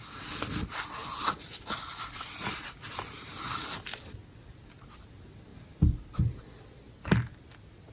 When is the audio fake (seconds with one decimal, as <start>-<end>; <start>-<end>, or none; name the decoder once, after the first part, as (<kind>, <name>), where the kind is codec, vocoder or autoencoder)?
1.0-5.1 (vocoder, BigVGAN v2); 5.5-6.0